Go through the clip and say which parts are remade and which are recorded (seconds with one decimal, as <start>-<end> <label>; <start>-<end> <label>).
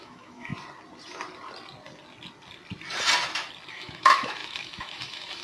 0.0-0.5 remade; 0.5-3.7 recorded; 3.7-5.4 remade